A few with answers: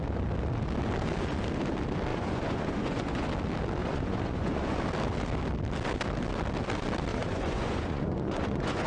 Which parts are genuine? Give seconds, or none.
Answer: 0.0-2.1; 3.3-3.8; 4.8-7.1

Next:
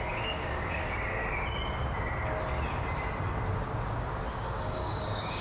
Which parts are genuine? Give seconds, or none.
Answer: 1.2-4.4

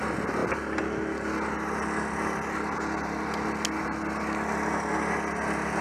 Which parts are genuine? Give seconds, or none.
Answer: 0.0-5.8